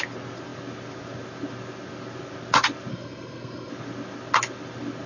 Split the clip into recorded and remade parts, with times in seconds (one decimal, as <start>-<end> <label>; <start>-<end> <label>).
0.0-2.9 recorded; 2.9-3.7 remade; 3.7-5.1 recorded